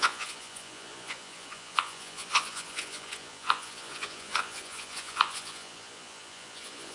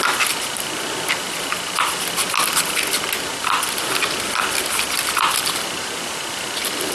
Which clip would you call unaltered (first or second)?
second